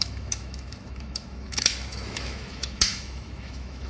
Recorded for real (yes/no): no